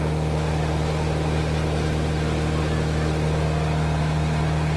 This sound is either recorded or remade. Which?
recorded